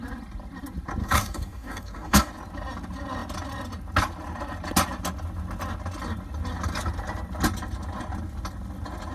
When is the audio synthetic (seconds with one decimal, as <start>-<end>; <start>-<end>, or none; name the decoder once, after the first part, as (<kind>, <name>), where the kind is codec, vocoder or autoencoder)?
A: 1.0-2.3 (codec, DAC)